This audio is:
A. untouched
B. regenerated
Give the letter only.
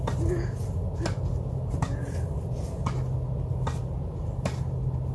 A